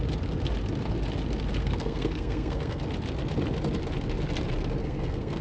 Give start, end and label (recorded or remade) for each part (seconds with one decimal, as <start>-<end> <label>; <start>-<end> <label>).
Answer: 0.0-1.6 recorded; 1.6-2.8 remade; 2.8-4.8 recorded; 4.8-5.4 remade